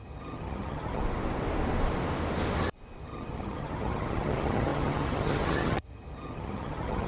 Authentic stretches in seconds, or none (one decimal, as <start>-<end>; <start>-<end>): 1.0-3.0